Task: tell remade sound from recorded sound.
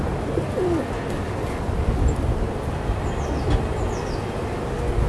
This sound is recorded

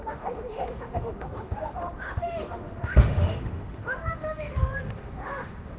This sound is remade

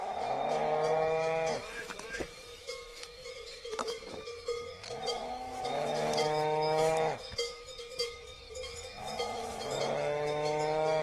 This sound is remade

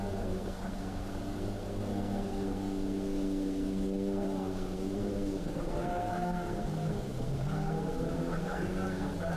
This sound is remade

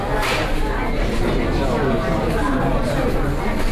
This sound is recorded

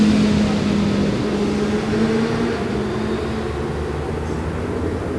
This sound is recorded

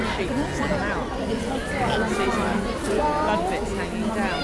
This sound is recorded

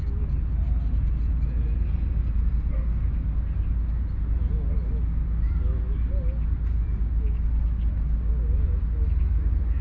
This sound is recorded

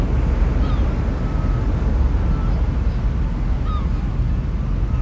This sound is recorded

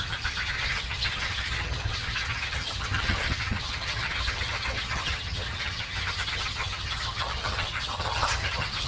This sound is remade